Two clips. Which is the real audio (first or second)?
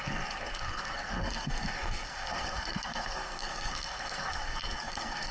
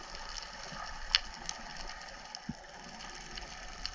second